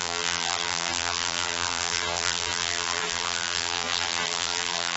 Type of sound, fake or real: fake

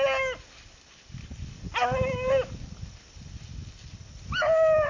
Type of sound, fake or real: real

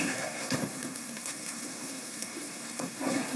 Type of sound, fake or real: fake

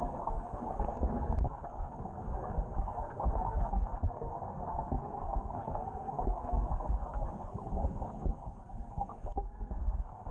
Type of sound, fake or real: fake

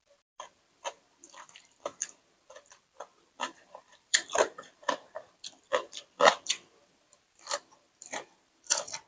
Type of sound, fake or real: fake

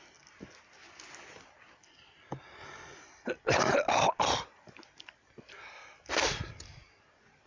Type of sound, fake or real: real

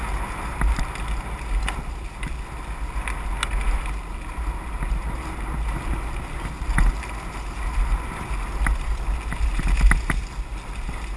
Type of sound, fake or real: real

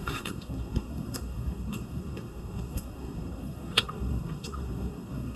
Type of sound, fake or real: fake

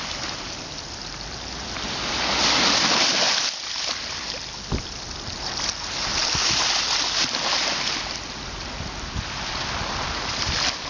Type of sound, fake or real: real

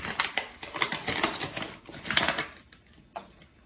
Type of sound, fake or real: real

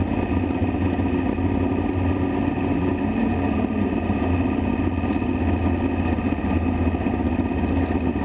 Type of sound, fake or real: real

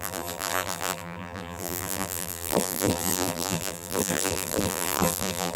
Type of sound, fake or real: fake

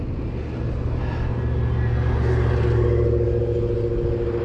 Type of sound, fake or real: real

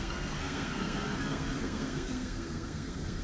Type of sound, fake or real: fake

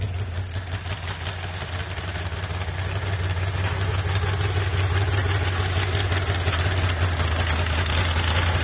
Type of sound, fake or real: real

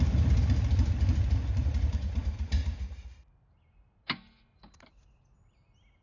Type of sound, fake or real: real